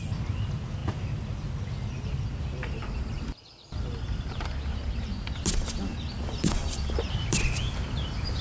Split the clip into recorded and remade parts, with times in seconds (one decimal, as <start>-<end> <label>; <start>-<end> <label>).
0.0-8.4 recorded